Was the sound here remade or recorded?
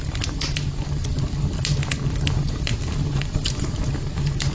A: recorded